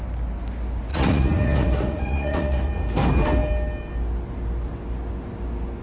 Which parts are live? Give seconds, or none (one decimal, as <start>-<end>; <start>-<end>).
0.0-0.9; 2.7-5.8